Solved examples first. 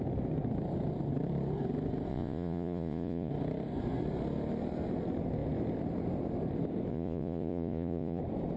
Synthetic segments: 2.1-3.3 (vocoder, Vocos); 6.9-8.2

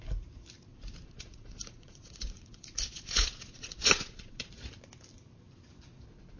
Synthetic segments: 0.7-4.5 (vocoder, Vocos)

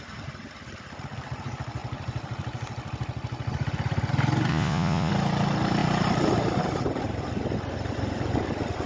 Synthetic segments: 4.5-5.1 (vocoder, Vocos)

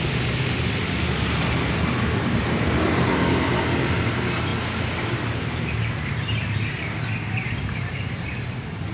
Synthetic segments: 0.0-4.5 (vocoder, BigVGAN v2); 5.1-8.9

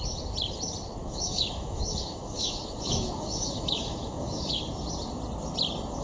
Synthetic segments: 1.0-4.6 (autoencoder, DAC-VAE)

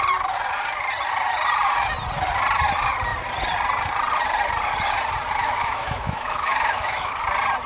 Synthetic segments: 5.4-7.1 (autoencoder, DAC-VAE)

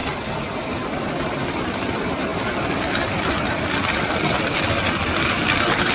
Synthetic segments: none

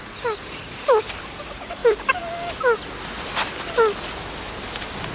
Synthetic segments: 0.0-1.8 (vocoder, BigVGAN v2)